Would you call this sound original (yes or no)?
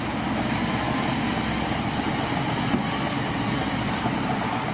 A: yes